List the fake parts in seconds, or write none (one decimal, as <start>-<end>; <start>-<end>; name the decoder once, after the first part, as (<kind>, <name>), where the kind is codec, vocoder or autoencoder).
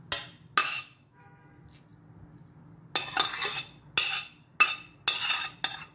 0.6-1.4 (autoencoder, DAC-VAE)